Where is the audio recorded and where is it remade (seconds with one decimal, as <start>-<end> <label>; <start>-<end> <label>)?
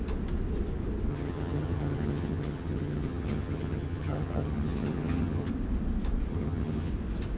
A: 0.0-1.1 recorded; 1.1-5.5 remade; 5.5-6.3 recorded; 6.3-6.9 remade; 6.9-7.4 recorded